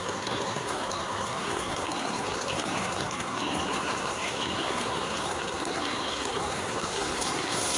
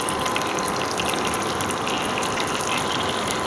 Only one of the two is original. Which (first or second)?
second